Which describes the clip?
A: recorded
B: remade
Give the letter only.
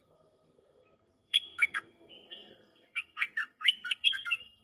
B